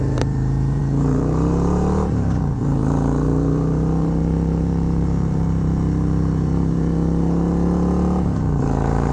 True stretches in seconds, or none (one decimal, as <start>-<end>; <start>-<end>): none